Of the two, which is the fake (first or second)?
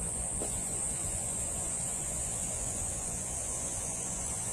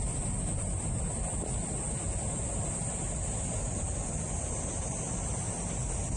first